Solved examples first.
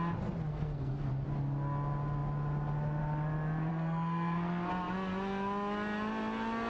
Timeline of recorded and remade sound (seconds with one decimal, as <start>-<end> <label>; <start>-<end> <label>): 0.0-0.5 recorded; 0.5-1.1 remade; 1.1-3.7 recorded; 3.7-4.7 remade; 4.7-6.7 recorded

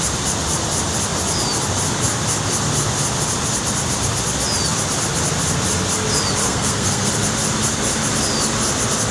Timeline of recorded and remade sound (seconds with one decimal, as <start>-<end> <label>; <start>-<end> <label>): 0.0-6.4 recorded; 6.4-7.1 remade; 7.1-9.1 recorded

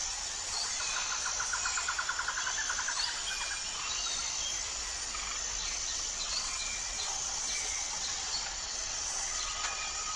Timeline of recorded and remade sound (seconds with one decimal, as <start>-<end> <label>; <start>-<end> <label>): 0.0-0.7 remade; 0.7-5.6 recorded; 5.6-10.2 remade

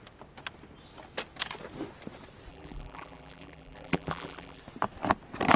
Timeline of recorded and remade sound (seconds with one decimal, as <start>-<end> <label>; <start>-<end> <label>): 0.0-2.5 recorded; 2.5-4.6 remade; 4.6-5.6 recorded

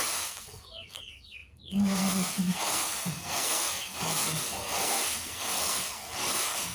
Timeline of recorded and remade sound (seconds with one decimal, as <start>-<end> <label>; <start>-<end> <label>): 0.0-6.7 remade

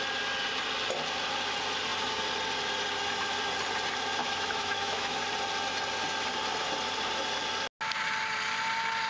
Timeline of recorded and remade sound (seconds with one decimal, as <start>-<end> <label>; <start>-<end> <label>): 0.0-4.2 recorded; 4.2-5.2 remade; 5.2-9.1 recorded

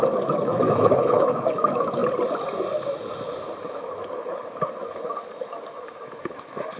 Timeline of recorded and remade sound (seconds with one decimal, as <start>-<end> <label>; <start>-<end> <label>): 0.0-2.0 remade; 2.0-3.7 recorded; 3.7-6.8 remade

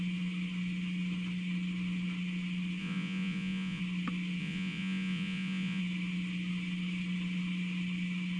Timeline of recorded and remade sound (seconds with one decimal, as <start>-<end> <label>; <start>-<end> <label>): 0.0-2.8 recorded; 2.8-3.8 remade; 3.8-4.4 recorded; 4.4-5.8 remade; 5.8-8.4 recorded